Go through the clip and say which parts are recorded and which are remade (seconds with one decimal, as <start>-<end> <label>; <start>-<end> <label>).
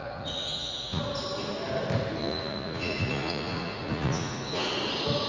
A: 0.0-1.0 remade; 1.0-2.2 recorded; 2.2-4.7 remade; 4.7-5.3 recorded